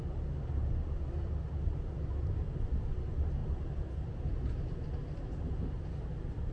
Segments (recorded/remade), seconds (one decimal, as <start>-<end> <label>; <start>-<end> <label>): 0.0-6.5 recorded